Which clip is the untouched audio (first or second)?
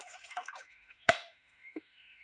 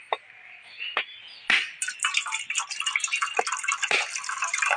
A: second